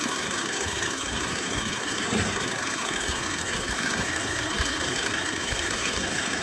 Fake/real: fake